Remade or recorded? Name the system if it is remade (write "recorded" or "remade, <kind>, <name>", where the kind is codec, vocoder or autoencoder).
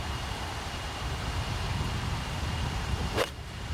remade, vocoder, BigVGAN v2